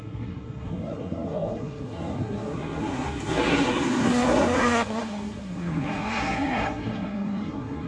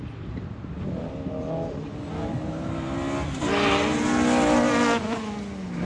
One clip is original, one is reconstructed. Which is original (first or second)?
second